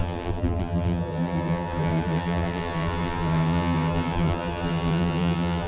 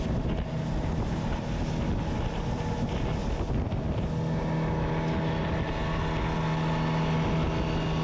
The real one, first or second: second